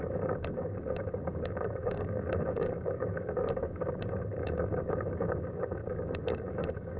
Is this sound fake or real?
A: fake